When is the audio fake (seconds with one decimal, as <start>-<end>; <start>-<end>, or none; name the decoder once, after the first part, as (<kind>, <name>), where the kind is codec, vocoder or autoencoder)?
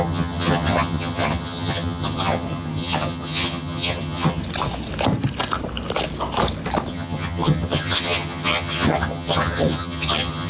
0.0-4.4 (vocoder, HiFi-GAN); 6.9-10.5